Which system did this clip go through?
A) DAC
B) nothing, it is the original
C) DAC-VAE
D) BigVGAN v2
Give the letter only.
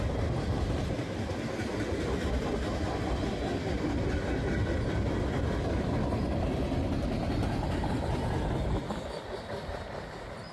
B